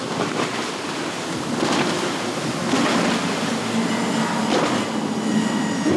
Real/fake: real